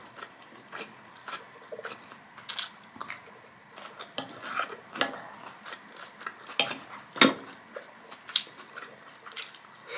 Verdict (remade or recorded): recorded